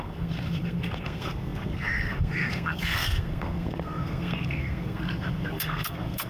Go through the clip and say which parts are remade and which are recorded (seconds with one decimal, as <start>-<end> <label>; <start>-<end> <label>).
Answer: 0.0-6.3 remade